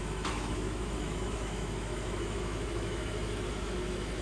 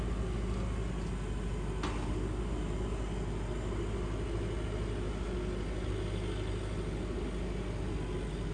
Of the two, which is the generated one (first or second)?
first